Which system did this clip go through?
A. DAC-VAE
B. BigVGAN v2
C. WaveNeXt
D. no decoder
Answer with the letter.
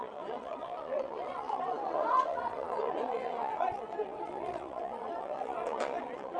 C